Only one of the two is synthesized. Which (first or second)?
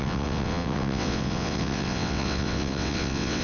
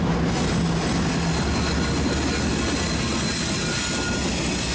first